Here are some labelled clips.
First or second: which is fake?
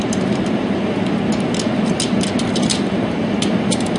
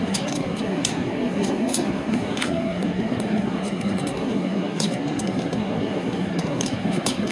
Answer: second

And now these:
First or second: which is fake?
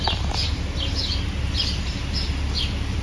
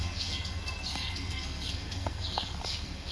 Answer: second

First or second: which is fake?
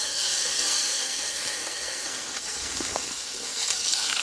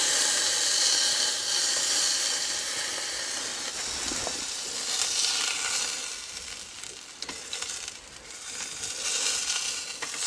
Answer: first